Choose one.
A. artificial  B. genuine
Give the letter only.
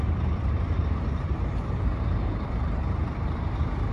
A